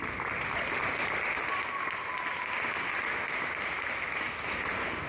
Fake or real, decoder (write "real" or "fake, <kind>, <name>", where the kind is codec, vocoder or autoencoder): real